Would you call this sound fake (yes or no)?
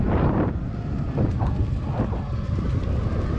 no